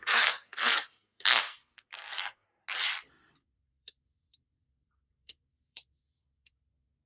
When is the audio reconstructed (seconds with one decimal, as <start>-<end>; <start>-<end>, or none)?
0.0-2.6; 3.4-7.1